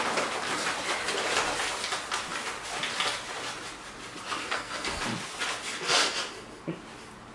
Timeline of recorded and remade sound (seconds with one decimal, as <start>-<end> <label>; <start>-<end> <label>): 0.0-4.4 recorded; 4.4-5.0 remade; 5.0-5.6 recorded; 5.6-6.1 remade; 6.1-7.3 recorded